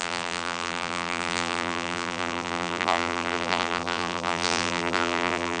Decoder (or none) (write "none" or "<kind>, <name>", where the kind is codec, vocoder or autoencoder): vocoder, BigVGAN v2